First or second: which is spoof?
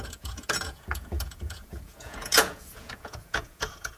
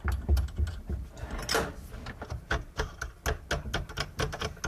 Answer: first